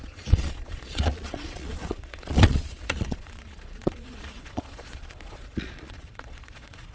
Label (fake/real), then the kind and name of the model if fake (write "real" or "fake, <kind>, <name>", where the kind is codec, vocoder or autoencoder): fake, vocoder, Vocos